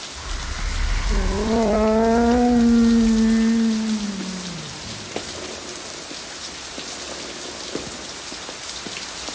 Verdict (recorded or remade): recorded